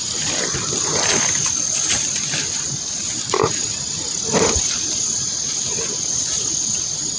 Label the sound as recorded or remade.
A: recorded